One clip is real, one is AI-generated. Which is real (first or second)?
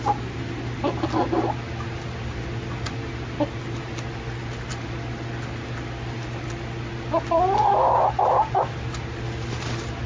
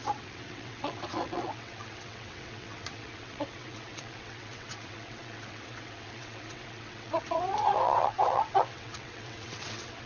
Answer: first